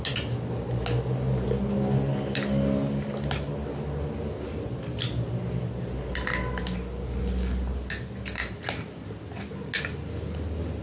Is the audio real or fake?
real